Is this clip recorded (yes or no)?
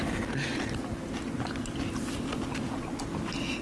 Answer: yes